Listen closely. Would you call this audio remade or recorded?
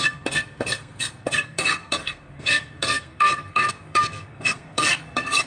remade